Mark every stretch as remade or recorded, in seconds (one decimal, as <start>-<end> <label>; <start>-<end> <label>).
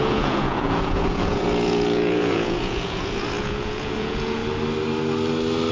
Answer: 0.0-4.4 remade; 4.4-5.7 recorded